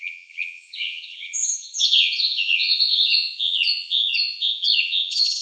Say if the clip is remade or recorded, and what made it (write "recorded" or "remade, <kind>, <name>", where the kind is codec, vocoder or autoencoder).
remade, vocoder, Vocos